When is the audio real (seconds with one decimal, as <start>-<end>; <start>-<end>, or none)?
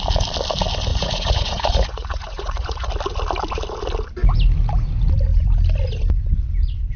0.0-0.9; 2.9-7.0